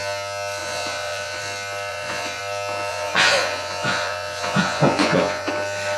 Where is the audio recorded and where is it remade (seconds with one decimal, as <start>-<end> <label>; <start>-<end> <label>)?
0.0-0.6 recorded; 0.6-1.4 remade; 1.4-1.9 recorded; 1.9-2.4 remade; 2.4-2.9 recorded; 2.9-5.5 remade; 5.5-6.0 recorded